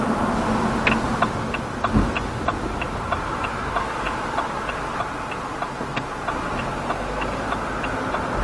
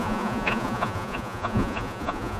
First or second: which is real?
first